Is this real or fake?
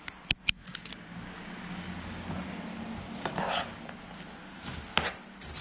real